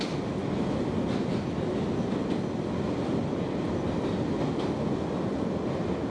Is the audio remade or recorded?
recorded